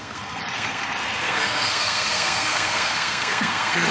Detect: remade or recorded remade